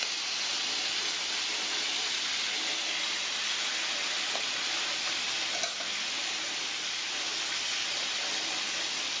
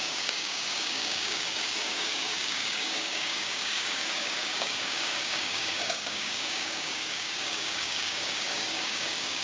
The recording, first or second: first